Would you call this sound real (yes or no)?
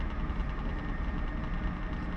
yes